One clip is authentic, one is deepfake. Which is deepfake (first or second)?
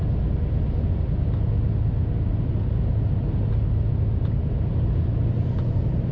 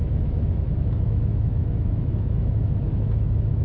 second